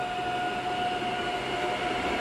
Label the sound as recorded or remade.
recorded